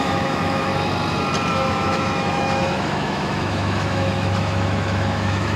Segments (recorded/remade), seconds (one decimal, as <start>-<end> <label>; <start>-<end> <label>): 0.0-0.7 remade; 0.7-1.5 recorded; 1.5-5.6 remade